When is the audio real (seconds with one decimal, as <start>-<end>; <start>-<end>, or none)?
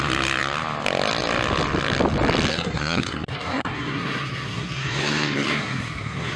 0.0-2.5